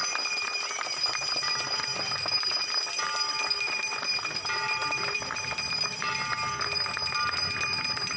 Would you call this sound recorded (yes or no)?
no